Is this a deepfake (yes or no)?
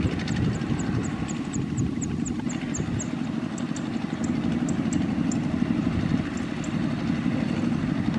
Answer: no